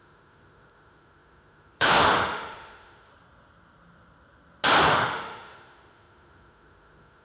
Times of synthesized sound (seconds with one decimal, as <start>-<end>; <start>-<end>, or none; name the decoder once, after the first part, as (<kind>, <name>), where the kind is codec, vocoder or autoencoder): 0.0-3.1 (autoencoder, DAC-VAE); 4.8-7.2